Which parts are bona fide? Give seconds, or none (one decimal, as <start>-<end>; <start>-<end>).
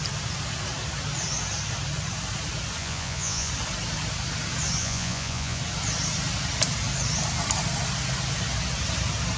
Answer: 0.0-2.8; 3.5-4.8; 5.6-9.4